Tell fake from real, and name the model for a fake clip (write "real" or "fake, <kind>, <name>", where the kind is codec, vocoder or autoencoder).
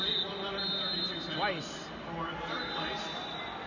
real